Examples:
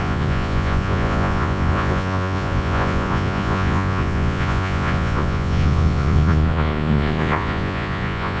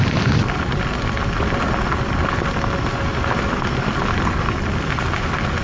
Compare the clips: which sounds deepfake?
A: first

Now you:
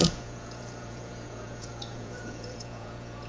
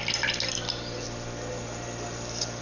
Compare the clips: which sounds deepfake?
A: first